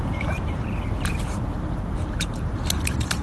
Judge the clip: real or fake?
fake